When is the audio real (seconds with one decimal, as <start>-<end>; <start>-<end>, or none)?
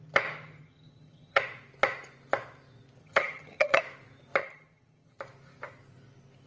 0.0-0.6; 1.4-3.0; 3.8-4.4; 5.2-6.5